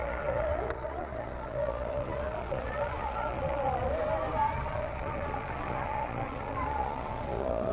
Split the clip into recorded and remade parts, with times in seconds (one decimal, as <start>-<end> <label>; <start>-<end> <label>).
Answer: 0.0-3.9 remade; 3.9-4.5 recorded; 4.5-7.7 remade